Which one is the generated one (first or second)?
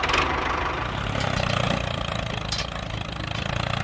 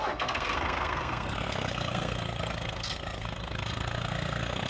second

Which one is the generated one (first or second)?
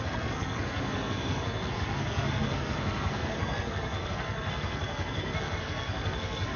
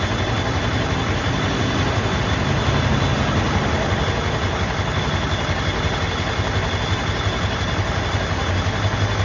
first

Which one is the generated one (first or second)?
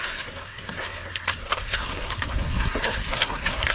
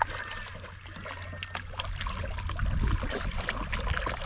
first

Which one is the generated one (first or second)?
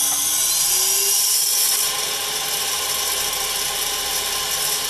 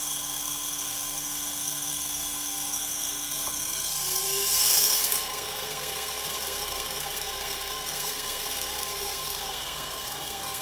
second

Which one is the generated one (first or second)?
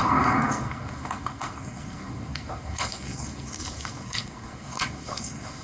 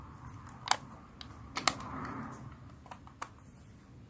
first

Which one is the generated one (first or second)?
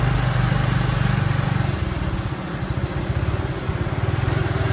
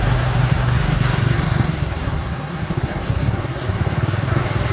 second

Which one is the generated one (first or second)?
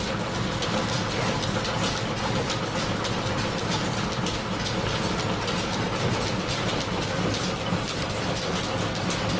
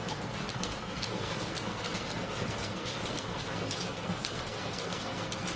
second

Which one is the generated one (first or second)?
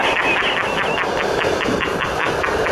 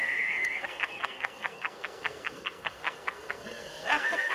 second